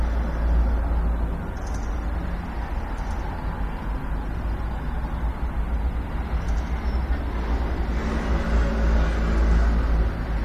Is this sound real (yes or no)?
yes